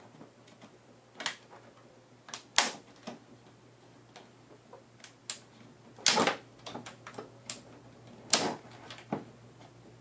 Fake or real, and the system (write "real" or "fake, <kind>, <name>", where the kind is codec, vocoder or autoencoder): real